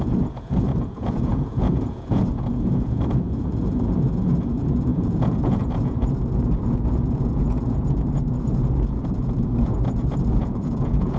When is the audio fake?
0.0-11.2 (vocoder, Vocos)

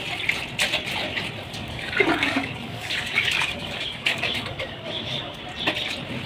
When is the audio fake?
1.6-5.4 (codec, DAC)